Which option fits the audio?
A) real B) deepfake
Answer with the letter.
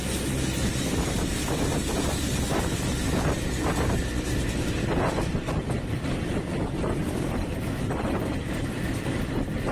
A